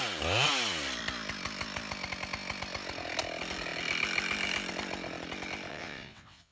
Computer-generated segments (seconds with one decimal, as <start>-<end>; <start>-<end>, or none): 5.7-6.5